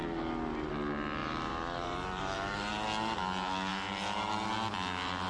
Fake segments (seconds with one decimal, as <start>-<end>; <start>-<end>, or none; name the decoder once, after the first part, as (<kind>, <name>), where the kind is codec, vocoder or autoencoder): 1.2-2.7 (vocoder, BigVGAN v2)